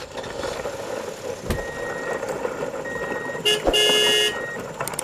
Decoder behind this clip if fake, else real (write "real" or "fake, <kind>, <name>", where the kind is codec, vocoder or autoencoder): real